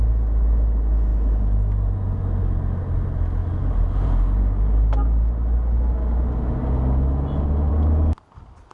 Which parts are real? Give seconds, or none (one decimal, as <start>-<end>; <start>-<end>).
0.0-8.7